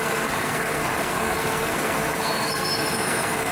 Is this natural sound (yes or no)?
no